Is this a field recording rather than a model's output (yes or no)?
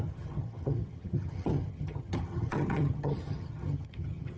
no